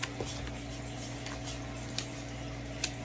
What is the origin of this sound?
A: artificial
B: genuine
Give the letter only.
B